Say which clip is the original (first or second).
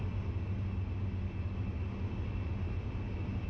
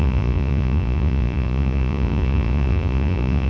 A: first